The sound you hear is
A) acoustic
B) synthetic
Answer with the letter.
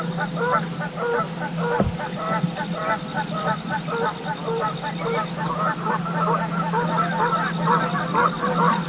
A